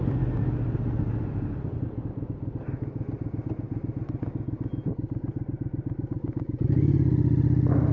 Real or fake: real